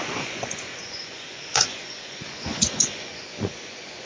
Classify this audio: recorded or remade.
remade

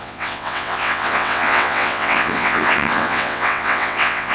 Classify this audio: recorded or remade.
remade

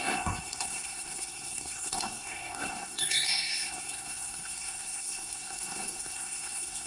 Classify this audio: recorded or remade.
remade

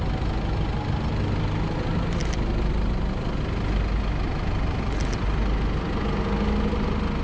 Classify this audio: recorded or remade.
recorded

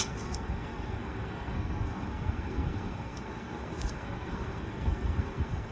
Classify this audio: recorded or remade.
remade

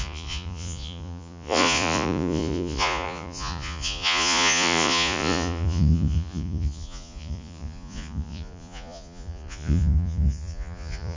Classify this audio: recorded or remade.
remade